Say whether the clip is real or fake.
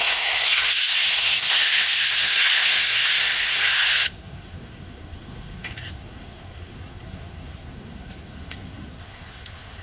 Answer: fake